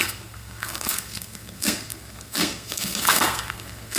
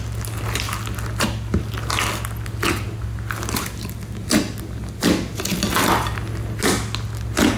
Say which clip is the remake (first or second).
first